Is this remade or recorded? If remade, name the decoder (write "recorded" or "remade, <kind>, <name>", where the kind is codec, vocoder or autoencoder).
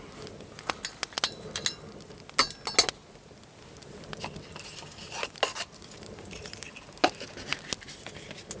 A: recorded